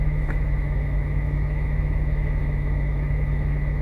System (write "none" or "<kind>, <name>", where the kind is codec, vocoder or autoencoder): autoencoder, DAC-VAE